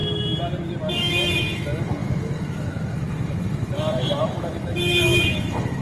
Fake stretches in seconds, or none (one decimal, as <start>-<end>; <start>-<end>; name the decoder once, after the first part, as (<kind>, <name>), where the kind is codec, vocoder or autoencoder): 0.9-5.8 (autoencoder, DAC-VAE)

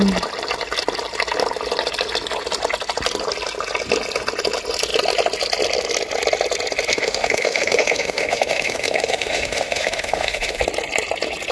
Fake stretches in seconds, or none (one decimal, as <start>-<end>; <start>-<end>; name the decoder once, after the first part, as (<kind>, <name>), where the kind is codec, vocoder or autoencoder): 6.9-10.6 (autoencoder, DAC-VAE)

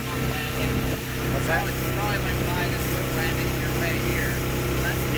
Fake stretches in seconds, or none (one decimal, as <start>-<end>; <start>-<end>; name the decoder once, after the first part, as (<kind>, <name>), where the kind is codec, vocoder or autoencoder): none

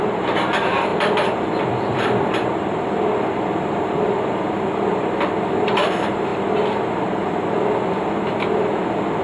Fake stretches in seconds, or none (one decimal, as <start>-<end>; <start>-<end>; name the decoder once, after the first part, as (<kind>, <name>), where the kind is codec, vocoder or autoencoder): 0.9-5.4 (vocoder, BigVGAN v2)

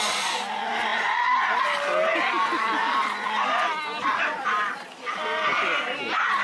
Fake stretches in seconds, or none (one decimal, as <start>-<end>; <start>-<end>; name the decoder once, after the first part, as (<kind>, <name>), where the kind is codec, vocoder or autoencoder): none

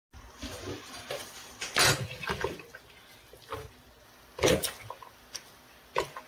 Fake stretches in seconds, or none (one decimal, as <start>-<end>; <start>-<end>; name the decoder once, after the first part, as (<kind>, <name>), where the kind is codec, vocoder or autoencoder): none

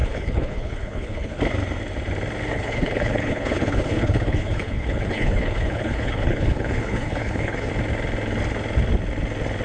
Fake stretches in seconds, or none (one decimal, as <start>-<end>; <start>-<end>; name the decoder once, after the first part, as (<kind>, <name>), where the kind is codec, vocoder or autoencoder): 0.0-1.4 (codec, HILCodec); 2.5-7.7